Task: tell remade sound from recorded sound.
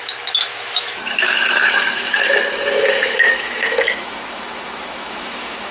remade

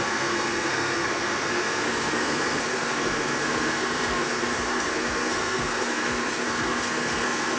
remade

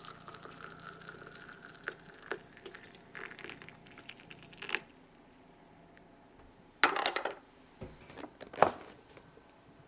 recorded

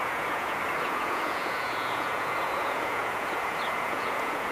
remade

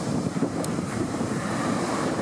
remade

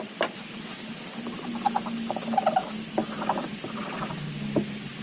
recorded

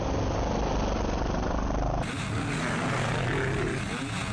recorded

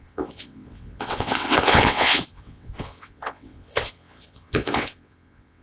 remade